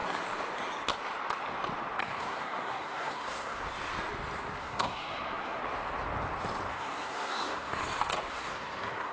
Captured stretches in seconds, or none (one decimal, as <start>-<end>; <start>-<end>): 0.0-2.0; 3.6-4.6; 5.6-6.7; 7.8-8.3